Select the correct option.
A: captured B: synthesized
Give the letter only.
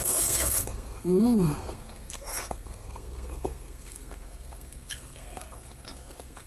B